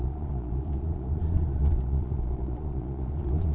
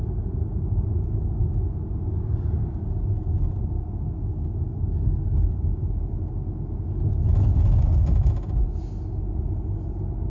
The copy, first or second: first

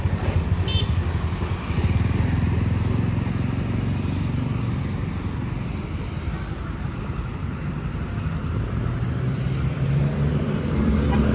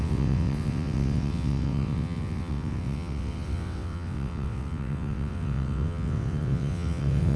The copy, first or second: second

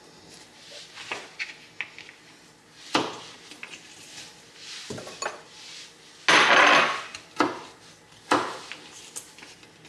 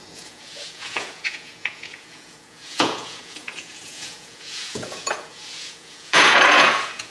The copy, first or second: second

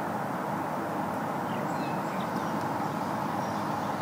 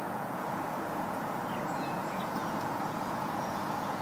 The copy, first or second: second